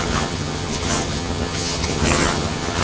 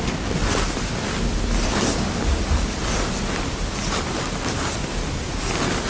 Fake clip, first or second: first